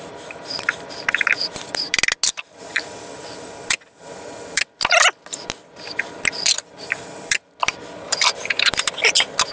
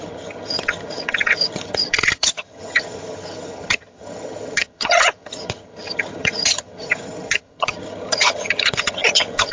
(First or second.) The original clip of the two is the first